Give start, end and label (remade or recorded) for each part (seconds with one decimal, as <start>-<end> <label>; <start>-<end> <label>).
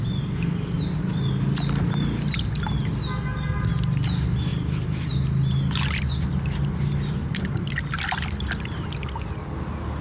0.0-10.0 recorded